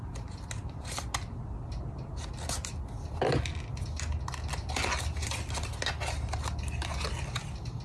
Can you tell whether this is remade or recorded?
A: recorded